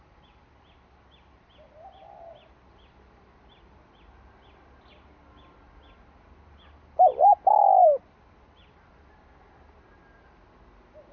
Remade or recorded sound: recorded